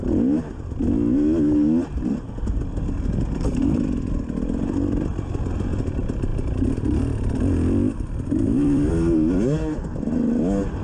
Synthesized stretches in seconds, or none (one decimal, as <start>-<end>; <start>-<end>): 6.3-8.9